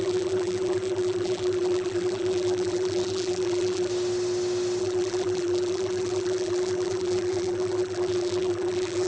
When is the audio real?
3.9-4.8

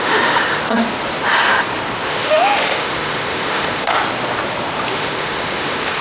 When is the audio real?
0.6-2.1; 4.0-4.9

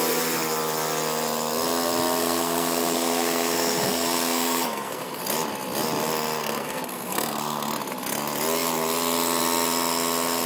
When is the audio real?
0.0-2.2; 5.2-6.4; 7.7-10.5

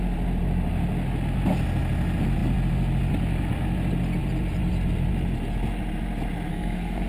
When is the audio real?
0.0-6.5

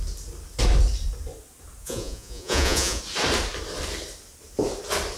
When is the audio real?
0.0-1.8; 3.0-5.2